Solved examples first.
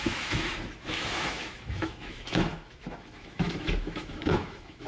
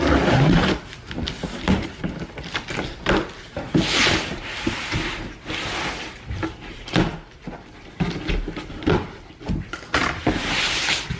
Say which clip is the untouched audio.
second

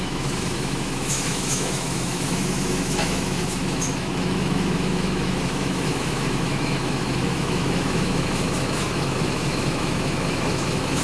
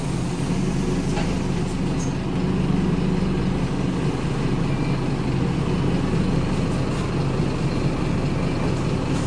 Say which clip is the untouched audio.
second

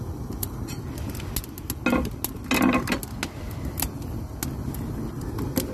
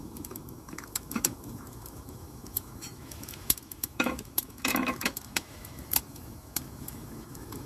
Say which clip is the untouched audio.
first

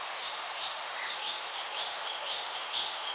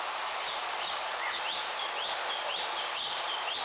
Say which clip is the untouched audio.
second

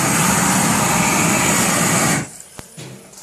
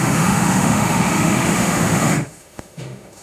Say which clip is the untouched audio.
first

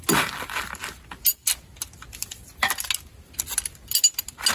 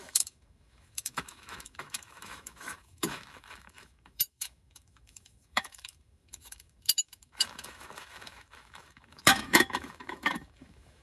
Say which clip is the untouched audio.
first